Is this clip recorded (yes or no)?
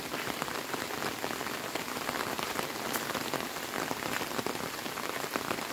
yes